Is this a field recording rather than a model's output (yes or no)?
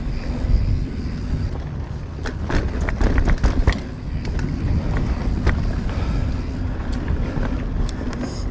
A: yes